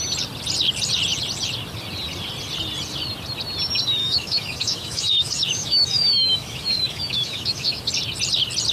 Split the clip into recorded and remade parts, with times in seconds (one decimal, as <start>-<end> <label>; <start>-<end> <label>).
0.0-4.0 recorded; 4.0-7.8 remade; 7.8-8.7 recorded